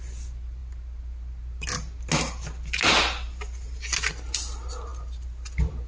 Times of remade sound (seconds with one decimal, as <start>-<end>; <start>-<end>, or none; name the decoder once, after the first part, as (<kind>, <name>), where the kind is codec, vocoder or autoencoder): none